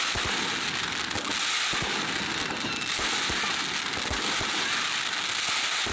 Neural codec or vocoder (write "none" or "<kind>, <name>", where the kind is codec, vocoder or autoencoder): none